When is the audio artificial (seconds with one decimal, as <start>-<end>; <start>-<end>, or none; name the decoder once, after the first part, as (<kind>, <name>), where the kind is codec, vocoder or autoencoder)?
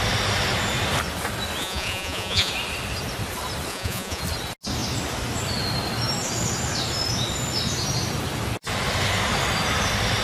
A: 1.6-2.5 (vocoder, Vocos); 3.7-4.2